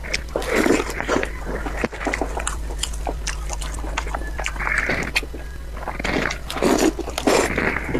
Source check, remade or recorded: recorded